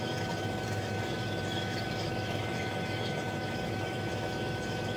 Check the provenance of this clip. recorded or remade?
remade